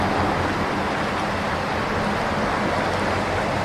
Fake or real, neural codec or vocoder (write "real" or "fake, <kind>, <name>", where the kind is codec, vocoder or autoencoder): real